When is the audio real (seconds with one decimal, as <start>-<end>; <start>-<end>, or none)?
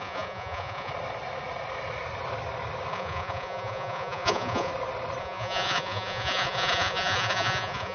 0.9-2.9; 4.7-5.2